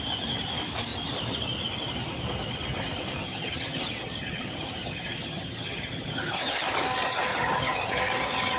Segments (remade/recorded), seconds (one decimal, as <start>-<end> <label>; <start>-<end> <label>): 0.0-3.2 recorded; 3.2-6.6 remade; 6.6-7.3 recorded; 7.3-8.0 remade; 8.0-8.6 recorded